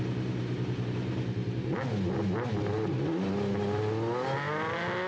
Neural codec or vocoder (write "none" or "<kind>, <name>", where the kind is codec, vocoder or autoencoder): none